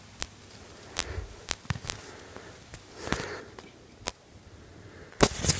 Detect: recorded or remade recorded